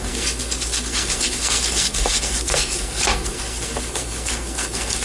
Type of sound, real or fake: fake